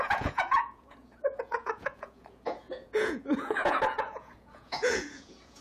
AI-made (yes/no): yes